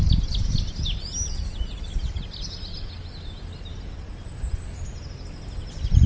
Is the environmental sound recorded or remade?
recorded